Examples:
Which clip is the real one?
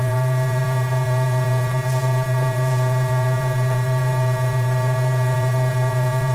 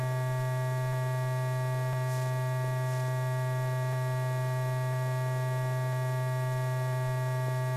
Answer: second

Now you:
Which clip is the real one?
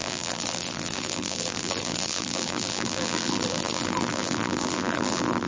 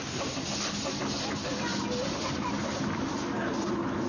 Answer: second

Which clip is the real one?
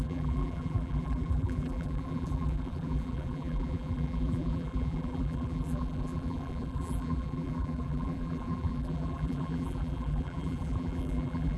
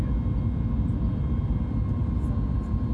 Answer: second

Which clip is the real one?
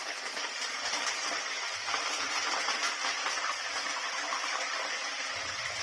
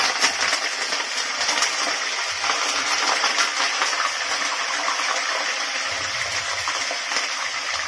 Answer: second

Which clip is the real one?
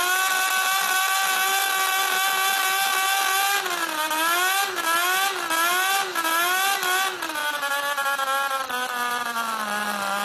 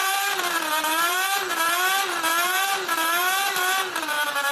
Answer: first